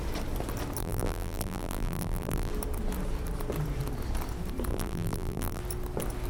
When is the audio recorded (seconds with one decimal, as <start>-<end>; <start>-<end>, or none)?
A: 0.0-0.8; 2.5-4.7; 5.6-6.3